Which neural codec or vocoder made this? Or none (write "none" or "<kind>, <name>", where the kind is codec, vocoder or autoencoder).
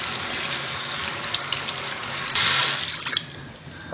none